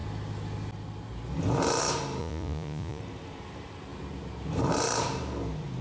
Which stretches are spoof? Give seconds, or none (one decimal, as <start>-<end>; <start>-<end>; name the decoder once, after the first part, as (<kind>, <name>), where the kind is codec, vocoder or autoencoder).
2.2-3.0 (vocoder, Vocos)